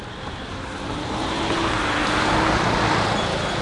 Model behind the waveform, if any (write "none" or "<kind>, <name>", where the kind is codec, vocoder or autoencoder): none